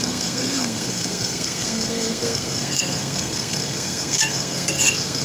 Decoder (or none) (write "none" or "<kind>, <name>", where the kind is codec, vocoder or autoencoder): codec, SNAC